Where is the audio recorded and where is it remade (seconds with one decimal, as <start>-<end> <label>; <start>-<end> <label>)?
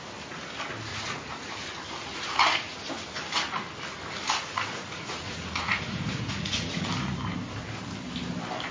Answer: 0.0-0.9 recorded; 0.9-1.5 remade; 1.5-4.5 recorded; 4.5-6.9 remade; 6.9-8.7 recorded